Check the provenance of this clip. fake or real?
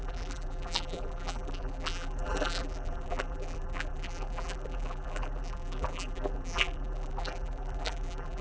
fake